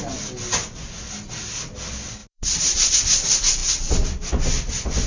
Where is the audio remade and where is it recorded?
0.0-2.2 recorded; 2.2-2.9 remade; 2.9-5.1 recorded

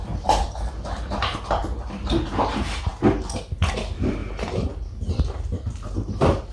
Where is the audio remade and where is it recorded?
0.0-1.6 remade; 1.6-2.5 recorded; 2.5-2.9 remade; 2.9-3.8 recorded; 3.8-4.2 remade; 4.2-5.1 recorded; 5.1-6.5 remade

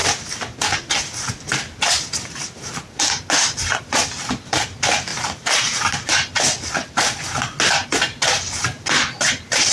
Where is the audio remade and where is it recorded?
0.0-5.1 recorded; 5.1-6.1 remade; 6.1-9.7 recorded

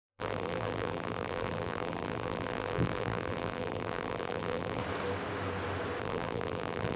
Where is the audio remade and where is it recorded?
0.0-4.8 remade; 4.8-6.0 recorded; 6.0-7.0 remade

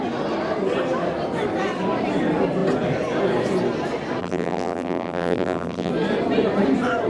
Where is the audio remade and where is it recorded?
0.0-4.2 recorded; 4.2-5.9 remade; 5.9-7.1 recorded

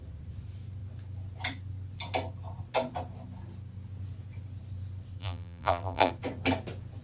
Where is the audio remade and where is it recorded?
0.0-5.2 recorded; 5.2-6.1 remade; 6.1-7.0 recorded